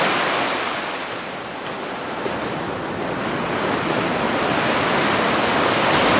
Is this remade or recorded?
recorded